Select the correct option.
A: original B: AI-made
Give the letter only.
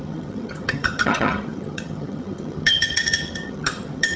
B